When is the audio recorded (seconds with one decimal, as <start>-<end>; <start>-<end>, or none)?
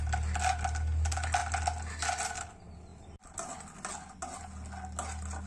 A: 0.0-2.9; 3.4-5.5